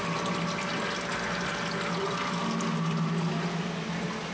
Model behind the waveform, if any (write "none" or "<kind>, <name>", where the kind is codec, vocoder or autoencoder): none